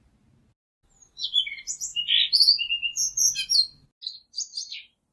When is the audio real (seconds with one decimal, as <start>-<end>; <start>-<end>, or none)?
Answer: 0.0-5.1